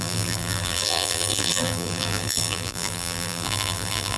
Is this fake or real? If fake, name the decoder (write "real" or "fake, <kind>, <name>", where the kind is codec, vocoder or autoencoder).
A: fake, vocoder, BigVGAN v2